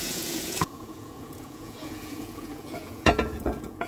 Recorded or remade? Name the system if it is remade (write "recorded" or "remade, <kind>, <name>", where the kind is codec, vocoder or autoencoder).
remade, vocoder, Vocos